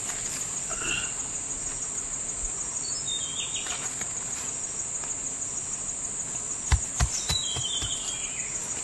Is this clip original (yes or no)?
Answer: yes